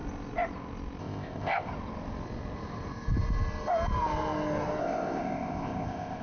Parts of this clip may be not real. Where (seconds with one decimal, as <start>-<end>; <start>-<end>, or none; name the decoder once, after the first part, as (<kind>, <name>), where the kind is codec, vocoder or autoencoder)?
1.0-1.7 (codec, ZipCodec); 4.8-6.2